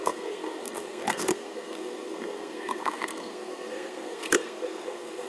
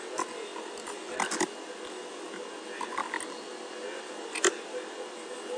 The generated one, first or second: first